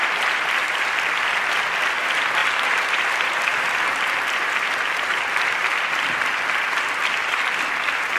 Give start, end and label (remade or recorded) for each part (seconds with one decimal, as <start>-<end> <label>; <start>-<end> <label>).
0.0-0.8 remade; 0.8-2.4 recorded; 2.4-4.1 remade; 4.1-8.2 recorded